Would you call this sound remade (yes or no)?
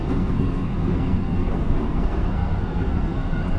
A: yes